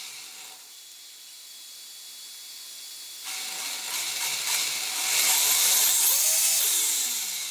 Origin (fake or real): real